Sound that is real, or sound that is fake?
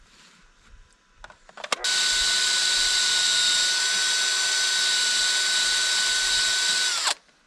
real